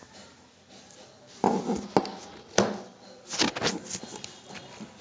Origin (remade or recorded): recorded